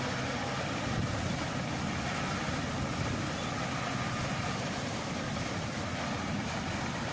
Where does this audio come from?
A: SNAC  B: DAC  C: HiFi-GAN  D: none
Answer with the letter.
D